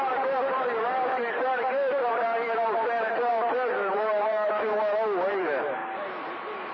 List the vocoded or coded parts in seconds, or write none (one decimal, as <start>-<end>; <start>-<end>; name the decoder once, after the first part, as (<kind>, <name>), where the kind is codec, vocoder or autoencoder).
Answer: 0.0-4.7 (vocoder, BigVGAN v2); 5.3-5.8; 6.3-6.7